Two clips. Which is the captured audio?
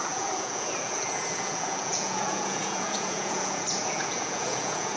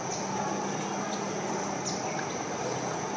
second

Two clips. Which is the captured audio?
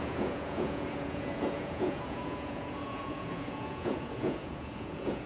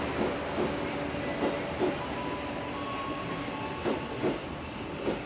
second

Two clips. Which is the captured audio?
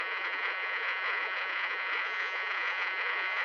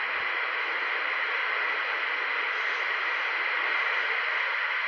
second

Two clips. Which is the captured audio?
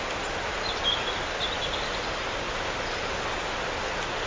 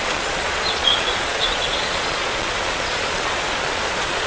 first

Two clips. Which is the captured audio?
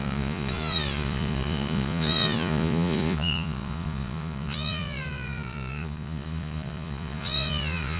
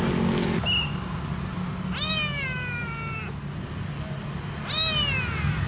second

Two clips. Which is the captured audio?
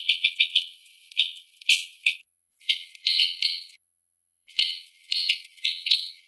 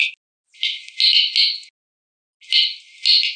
second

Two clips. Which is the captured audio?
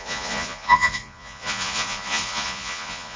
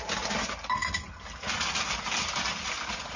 second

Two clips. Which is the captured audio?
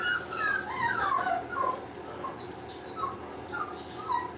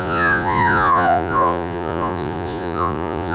first